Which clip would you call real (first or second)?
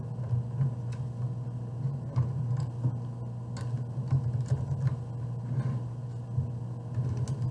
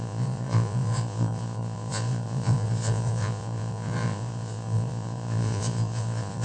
first